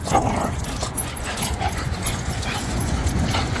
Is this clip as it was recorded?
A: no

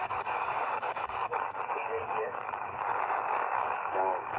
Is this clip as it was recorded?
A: no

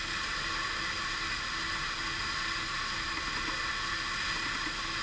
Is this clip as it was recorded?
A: yes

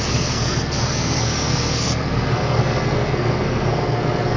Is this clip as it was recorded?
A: no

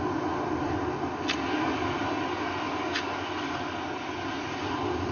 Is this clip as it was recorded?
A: yes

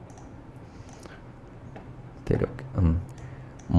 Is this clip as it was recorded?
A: no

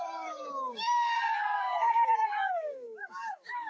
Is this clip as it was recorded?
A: no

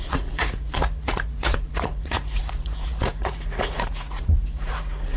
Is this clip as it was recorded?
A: no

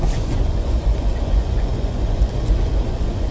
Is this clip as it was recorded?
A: no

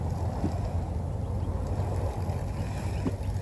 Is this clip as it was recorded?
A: yes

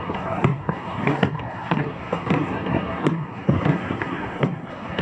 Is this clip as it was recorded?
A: no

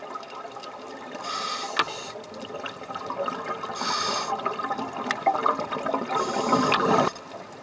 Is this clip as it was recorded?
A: yes